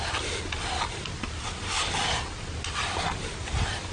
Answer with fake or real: real